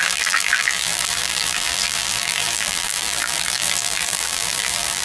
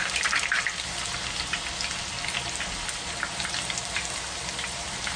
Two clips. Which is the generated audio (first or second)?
first